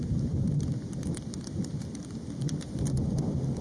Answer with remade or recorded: recorded